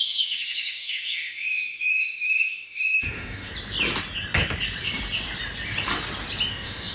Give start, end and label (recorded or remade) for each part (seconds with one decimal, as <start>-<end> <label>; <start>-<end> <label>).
0.0-3.5 remade; 3.5-6.5 recorded; 6.5-6.9 remade